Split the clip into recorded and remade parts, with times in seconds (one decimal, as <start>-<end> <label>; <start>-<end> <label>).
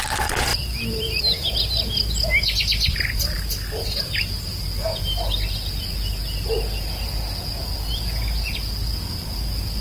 0.0-0.5 recorded; 0.5-1.2 remade; 1.2-9.8 recorded